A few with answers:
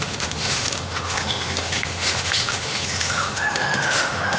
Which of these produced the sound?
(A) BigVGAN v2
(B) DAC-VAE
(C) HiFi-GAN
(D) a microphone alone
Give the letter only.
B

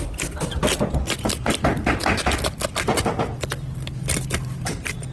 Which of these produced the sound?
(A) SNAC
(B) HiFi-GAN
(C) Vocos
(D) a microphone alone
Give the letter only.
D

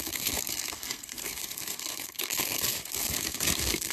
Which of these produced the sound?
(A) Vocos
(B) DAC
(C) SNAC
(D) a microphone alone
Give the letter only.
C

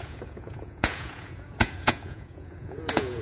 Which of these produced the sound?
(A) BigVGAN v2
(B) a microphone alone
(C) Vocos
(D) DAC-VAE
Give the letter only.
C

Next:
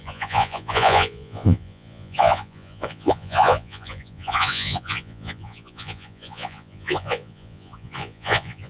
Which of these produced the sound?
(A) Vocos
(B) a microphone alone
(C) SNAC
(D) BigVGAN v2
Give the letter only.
A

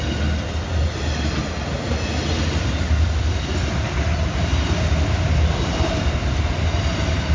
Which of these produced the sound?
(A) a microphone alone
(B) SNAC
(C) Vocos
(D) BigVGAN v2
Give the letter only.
A